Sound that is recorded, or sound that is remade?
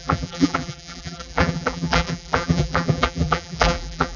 remade